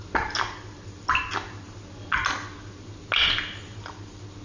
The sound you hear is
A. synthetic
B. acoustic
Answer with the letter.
B